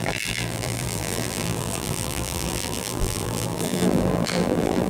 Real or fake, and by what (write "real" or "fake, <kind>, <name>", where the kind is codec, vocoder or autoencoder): fake, vocoder, BigVGAN v2